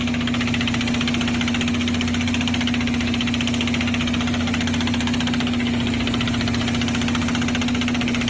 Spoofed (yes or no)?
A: no